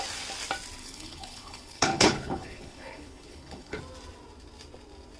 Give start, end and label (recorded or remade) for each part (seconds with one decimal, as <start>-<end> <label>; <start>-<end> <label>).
0.0-0.8 recorded; 0.8-3.8 remade; 3.8-5.2 recorded